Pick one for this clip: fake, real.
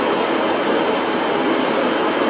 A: real